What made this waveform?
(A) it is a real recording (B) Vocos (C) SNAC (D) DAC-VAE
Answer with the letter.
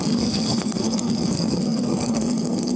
C